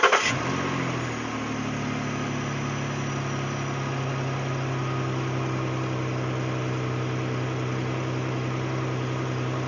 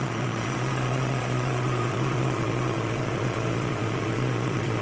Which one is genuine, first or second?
first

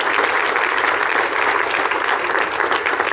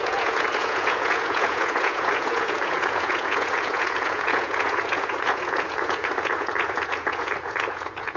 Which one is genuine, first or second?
first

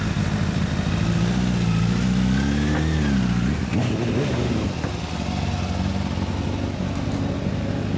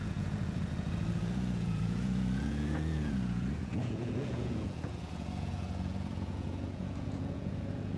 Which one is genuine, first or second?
first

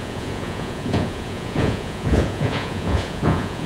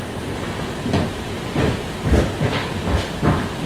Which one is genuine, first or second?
second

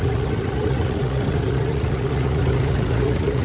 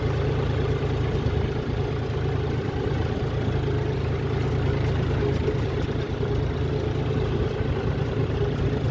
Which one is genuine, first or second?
second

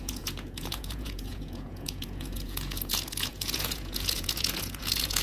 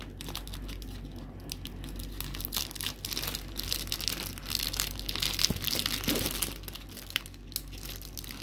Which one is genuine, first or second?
second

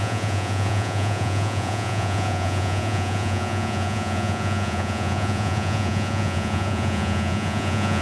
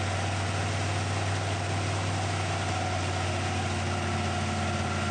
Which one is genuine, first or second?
second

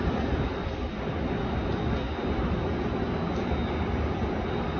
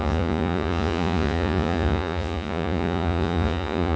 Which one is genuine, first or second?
first